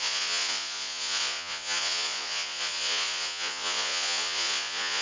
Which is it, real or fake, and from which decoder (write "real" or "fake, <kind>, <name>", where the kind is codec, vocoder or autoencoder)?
fake, vocoder, Vocos